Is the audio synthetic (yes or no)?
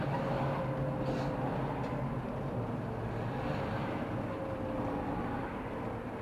no